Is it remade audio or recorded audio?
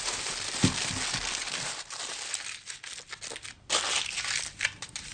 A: recorded